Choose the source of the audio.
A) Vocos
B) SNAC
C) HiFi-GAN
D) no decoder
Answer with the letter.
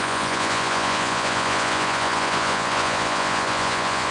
A